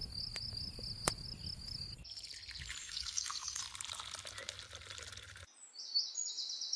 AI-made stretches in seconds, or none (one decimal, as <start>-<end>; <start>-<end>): 2.8-3.6

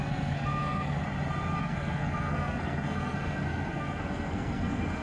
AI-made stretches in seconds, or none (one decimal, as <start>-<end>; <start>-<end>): 0.0-1.0; 1.6-5.0

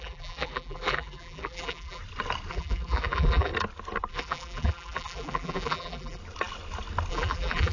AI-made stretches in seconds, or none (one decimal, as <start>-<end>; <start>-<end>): 0.0-2.0; 2.5-3.5; 4.1-6.2; 7.1-7.7

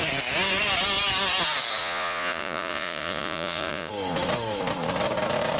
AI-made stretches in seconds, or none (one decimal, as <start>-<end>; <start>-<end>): 1.8-3.9